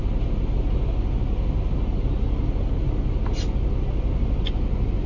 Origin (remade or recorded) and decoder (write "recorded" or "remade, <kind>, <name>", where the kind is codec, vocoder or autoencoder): recorded